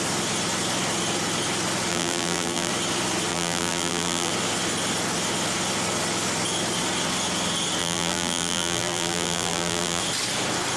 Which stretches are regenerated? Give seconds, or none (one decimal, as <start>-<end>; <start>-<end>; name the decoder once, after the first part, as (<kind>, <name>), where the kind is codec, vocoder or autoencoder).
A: 1.9-2.7 (vocoder, BigVGAN v2); 3.3-4.3; 7.8-10.0